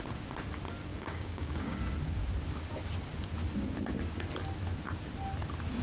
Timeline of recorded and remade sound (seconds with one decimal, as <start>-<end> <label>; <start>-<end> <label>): 0.0-0.9 recorded; 0.9-1.8 remade; 1.8-5.8 recorded